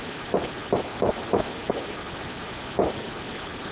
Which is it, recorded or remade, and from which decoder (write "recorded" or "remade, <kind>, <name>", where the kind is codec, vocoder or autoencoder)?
recorded